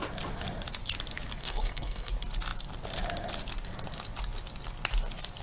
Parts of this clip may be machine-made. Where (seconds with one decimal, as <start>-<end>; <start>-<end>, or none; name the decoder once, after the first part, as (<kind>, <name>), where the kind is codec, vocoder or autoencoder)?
1.4-2.1 (codec, SNAC)